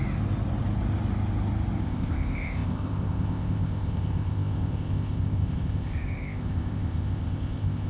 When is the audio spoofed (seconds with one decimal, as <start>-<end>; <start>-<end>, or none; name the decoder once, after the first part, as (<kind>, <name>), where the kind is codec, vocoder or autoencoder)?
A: 1.8-7.9 (codec, ZipCodec)